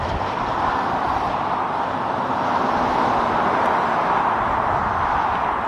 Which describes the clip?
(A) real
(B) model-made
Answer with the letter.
A